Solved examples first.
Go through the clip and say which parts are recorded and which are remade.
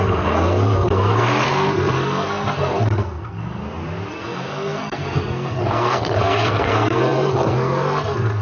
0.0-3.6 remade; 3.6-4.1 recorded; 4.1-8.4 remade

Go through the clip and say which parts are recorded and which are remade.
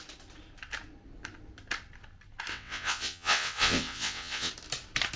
0.0-2.5 recorded; 2.5-4.5 remade; 4.5-5.2 recorded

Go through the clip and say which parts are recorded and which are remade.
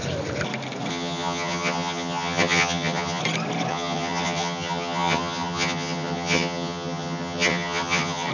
0.0-0.9 recorded; 0.9-3.2 remade; 3.2-3.7 recorded; 3.7-8.3 remade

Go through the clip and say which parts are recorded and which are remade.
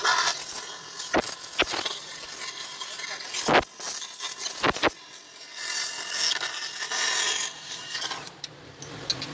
0.0-7.5 recorded; 7.5-8.8 remade; 8.8-9.3 recorded